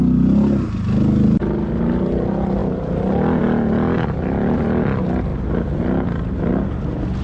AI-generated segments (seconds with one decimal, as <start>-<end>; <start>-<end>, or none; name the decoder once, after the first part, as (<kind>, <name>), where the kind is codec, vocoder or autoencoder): none

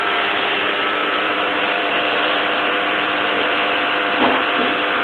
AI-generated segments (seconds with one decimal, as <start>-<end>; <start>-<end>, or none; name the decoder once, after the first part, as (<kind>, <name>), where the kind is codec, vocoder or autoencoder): 1.0-4.0 (vocoder, BigVGAN v2)